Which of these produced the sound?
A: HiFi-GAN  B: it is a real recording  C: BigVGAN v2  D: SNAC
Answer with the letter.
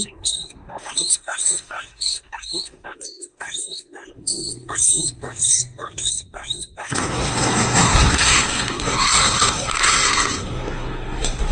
D